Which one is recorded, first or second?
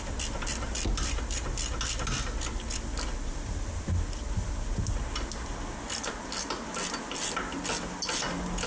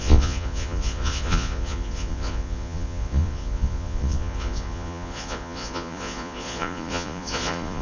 first